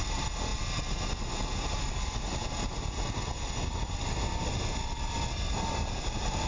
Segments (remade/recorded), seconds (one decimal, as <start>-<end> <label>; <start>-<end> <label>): 0.0-6.5 recorded